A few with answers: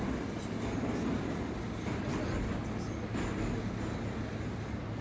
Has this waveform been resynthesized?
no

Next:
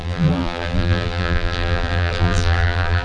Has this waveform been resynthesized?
yes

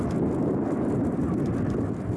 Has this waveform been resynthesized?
no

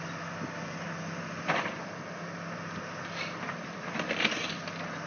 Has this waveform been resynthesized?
no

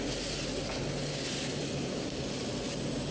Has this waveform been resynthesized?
no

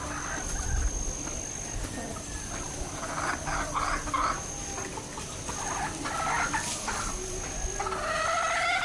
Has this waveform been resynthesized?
no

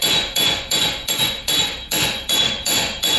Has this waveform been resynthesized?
yes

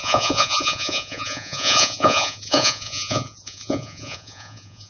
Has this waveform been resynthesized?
yes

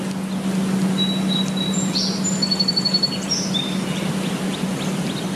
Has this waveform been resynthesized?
no